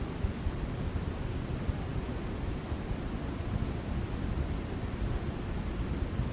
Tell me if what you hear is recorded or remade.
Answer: recorded